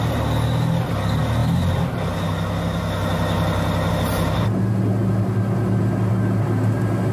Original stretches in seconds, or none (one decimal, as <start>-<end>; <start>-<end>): 0.0-7.1